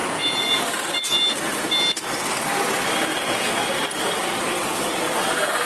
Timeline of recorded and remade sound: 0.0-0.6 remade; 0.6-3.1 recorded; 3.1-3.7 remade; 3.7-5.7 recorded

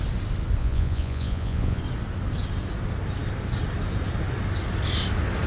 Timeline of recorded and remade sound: 0.0-0.6 recorded; 0.6-1.8 remade; 1.8-5.5 recorded

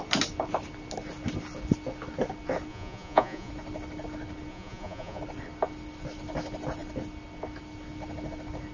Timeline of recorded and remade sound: 0.0-2.7 recorded; 2.7-3.5 remade; 3.5-4.5 recorded; 4.5-5.2 remade; 5.2-8.7 recorded

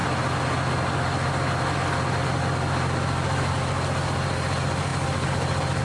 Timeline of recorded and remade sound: 0.0-5.8 recorded

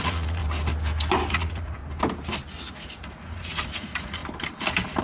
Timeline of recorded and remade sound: 0.0-0.4 remade; 0.4-1.3 recorded; 1.3-1.8 remade; 1.8-2.8 recorded; 2.8-4.2 remade; 4.2-5.0 recorded

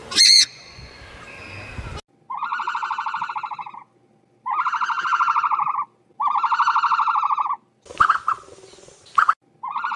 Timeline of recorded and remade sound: 0.0-1.0 remade; 1.0-10.0 recorded

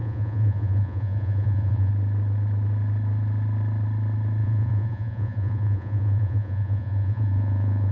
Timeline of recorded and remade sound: 0.0-1.9 remade; 1.9-4.4 recorded; 4.4-7.9 remade